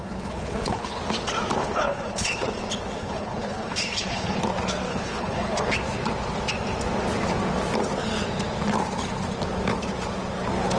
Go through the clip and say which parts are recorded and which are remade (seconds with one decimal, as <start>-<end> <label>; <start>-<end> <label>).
0.0-1.0 remade; 1.0-1.6 recorded; 1.6-2.5 remade; 2.5-3.0 recorded; 3.0-4.4 remade; 4.4-4.9 recorded; 4.9-5.7 remade; 5.7-10.8 recorded